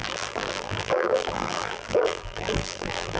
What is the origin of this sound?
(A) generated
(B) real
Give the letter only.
A